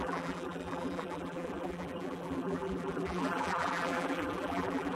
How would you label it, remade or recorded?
remade